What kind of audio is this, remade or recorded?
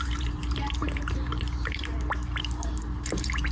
remade